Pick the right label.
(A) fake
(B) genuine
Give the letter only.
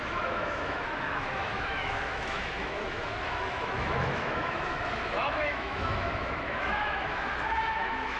A